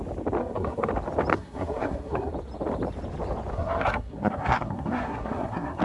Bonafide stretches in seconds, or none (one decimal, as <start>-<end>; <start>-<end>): 0.0-0.4; 0.9-1.3; 2.3-3.5